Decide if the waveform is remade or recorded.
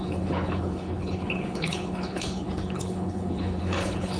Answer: remade